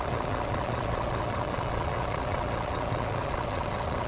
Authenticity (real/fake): fake